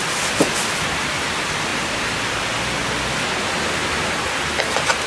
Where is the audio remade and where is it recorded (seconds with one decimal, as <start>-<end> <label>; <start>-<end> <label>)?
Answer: 0.0-1.7 recorded; 1.7-2.4 remade; 2.4-3.8 recorded; 3.8-4.6 remade; 4.6-5.1 recorded